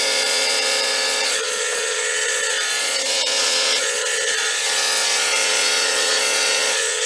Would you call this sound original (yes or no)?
no